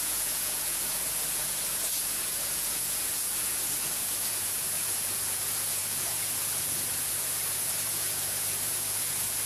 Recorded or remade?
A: remade